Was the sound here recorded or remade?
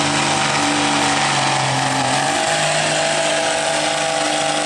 recorded